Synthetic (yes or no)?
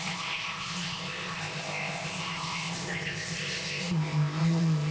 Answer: yes